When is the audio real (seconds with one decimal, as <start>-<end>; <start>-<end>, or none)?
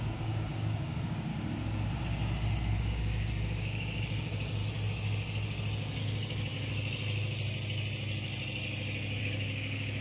1.3-2.8; 4.6-6.0; 6.5-9.2